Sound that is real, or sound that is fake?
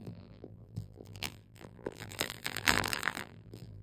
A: fake